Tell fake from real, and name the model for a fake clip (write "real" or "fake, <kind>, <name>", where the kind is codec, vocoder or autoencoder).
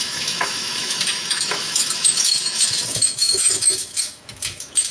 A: fake, autoencoder, DAC-VAE